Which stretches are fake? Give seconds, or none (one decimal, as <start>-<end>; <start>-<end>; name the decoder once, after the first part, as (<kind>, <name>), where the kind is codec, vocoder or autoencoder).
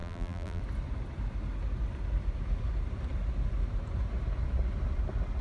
0.0-0.6 (vocoder, BigVGAN v2)